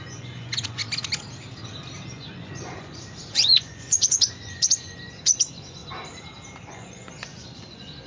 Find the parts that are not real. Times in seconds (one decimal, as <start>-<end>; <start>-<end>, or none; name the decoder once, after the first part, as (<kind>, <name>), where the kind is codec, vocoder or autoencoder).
0.0-0.8 (vocoder, Vocos); 2.1-5.8; 6.7-8.1